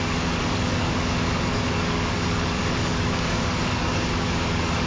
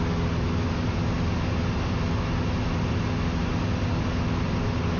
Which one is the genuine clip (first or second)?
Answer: second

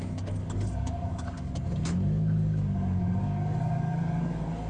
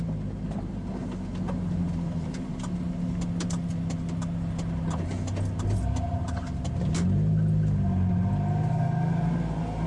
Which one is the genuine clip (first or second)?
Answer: second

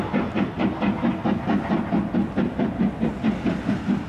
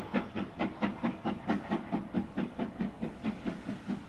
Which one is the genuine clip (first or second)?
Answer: first